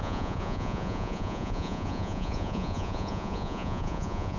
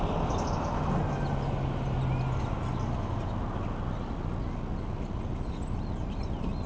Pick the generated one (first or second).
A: first